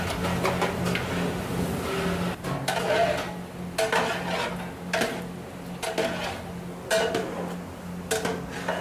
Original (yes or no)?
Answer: yes